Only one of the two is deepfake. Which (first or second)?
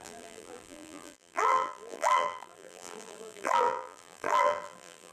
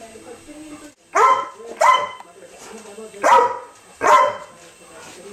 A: first